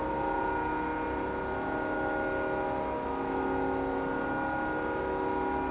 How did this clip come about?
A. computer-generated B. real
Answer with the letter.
B